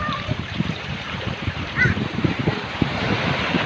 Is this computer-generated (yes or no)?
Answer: yes